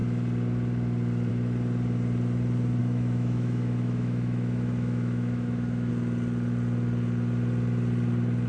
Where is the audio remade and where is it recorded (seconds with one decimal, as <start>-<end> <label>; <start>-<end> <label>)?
0.0-2.8 recorded; 2.8-5.9 remade; 5.9-8.5 recorded